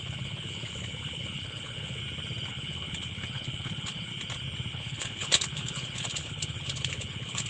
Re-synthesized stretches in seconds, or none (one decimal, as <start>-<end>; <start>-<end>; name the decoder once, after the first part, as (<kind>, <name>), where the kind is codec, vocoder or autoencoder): 0.0-2.0 (codec, HILCodec); 2.5-4.1; 4.7-7.5